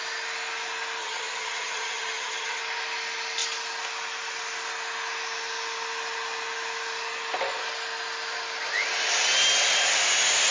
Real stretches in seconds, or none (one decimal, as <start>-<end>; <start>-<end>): 0.0-1.0; 2.6-10.5